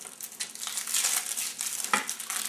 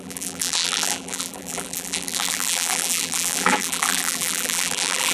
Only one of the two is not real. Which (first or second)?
second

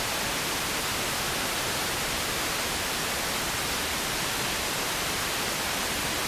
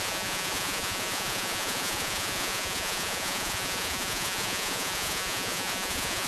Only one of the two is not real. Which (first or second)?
second